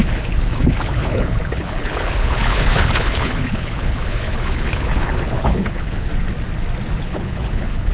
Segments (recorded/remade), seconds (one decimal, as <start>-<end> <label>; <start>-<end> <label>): 0.0-6.1 remade; 6.1-7.0 recorded; 7.0-7.9 remade